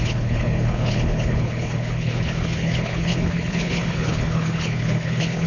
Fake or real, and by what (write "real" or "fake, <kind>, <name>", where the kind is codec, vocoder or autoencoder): fake, codec, HILCodec